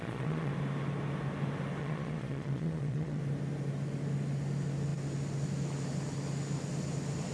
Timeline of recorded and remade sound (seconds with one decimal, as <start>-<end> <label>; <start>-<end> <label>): 0.0-0.5 remade; 0.5-1.8 recorded; 1.8-3.2 remade; 3.2-7.3 recorded